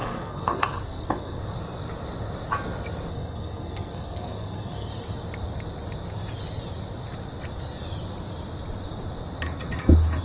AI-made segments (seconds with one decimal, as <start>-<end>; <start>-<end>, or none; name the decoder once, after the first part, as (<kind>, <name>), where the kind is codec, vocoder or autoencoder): 0.0-1.4 (codec, SNAC); 3.1-4.9